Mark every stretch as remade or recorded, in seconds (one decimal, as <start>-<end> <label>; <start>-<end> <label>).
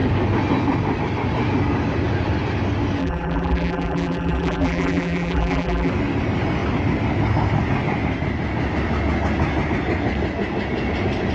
0.0-3.0 recorded; 3.0-5.9 remade; 5.9-11.3 recorded